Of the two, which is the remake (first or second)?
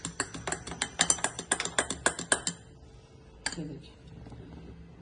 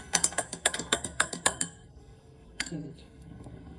second